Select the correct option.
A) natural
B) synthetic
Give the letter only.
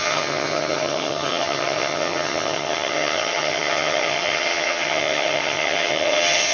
B